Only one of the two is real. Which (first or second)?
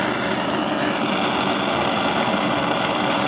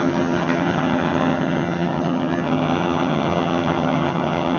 first